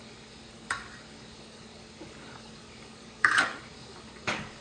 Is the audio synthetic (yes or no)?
yes